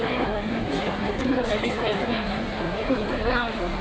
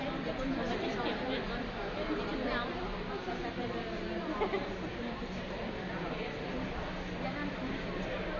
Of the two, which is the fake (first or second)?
first